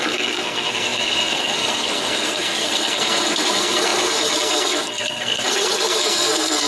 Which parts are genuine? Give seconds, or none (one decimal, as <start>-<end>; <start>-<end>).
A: none